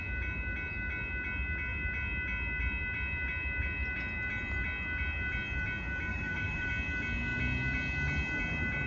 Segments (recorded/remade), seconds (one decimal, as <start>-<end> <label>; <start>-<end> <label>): 0.0-6.1 recorded; 6.1-6.7 remade; 6.7-8.9 recorded